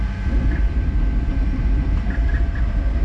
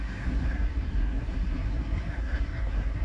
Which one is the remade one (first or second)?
second